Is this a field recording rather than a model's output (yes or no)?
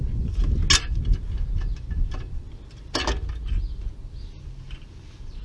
yes